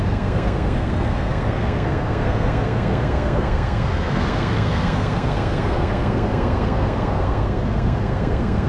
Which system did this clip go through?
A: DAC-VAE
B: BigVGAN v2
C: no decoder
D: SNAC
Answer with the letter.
D